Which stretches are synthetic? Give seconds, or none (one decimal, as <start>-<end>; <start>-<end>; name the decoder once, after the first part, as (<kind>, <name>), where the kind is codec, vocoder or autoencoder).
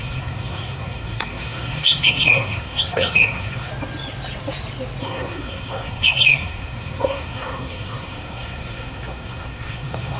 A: 0.0-3.7 (codec, SNAC); 5.0-10.2